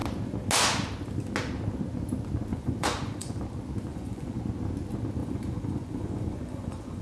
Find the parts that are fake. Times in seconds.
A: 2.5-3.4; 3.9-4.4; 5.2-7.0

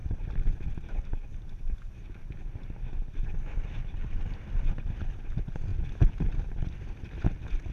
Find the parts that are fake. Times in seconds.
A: none

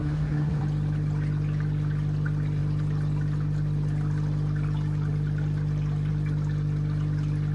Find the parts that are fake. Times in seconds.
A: 0.0-0.6